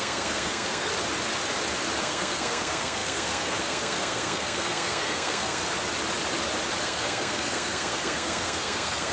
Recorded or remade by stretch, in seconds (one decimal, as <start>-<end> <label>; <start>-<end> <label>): 0.0-0.9 remade; 0.9-2.0 recorded; 2.0-5.6 remade; 5.6-6.8 recorded; 6.8-9.1 remade